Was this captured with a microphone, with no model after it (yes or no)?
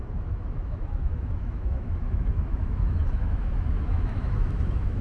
no